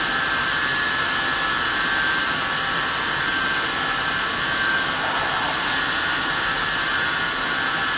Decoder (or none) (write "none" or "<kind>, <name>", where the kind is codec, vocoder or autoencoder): none